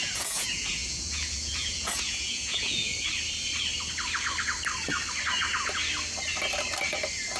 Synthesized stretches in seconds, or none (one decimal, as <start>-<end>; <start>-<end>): 0.0-2.9